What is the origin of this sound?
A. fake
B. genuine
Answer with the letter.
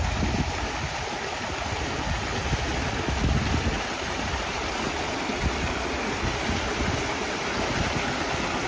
B